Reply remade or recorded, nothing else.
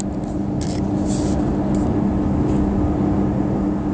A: recorded